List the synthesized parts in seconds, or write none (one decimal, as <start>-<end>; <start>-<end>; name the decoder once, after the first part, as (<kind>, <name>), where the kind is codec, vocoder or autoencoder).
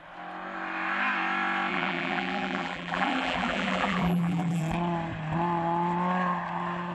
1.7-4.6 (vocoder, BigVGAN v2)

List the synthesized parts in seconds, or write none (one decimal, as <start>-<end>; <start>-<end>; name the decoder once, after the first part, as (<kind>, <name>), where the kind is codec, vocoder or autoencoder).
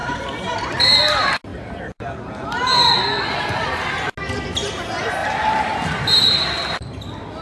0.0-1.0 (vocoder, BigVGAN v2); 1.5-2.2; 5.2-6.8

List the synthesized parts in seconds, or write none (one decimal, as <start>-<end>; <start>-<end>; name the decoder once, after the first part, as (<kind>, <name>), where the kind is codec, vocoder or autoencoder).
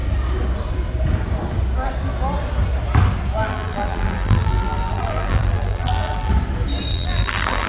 3.4-6.3 (vocoder, BigVGAN v2); 6.9-7.7